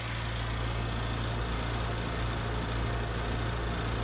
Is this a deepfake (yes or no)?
no